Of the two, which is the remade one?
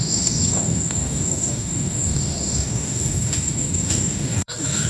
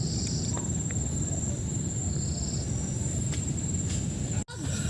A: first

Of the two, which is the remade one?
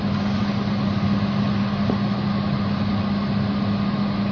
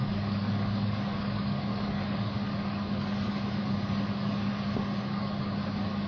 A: second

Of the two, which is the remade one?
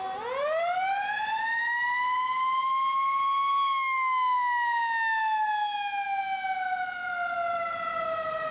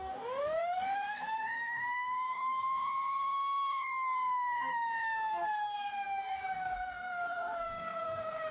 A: second